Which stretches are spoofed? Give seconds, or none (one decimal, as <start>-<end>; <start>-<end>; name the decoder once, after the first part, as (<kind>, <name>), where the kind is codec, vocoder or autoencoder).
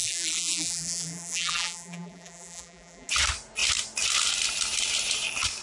0.0-3.1 (vocoder, BigVGAN v2)